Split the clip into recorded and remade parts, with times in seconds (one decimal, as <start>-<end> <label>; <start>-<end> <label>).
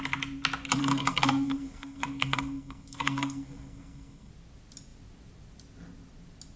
0.0-0.8 recorded; 0.8-4.3 remade; 4.3-6.6 recorded